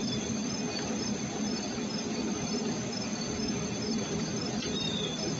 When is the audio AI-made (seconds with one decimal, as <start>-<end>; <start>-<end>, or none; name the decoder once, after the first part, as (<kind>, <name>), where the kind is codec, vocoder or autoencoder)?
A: none